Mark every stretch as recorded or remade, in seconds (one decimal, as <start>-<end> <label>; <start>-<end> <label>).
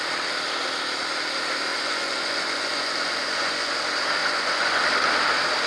0.0-1.7 recorded; 1.7-3.7 remade; 3.7-4.2 recorded; 4.2-4.8 remade; 4.8-5.7 recorded